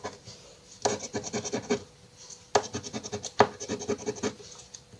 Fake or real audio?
real